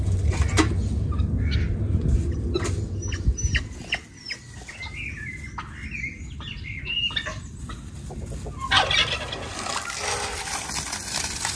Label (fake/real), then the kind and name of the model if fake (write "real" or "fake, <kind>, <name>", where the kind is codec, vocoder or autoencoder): real